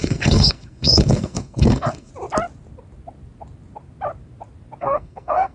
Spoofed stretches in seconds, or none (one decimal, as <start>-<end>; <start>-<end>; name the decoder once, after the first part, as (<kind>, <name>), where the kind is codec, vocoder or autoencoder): 0.0-2.1 (codec, SNAC); 4.8-5.5